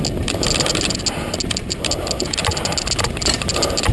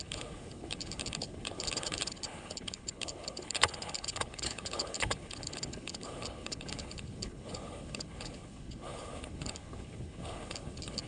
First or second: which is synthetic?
second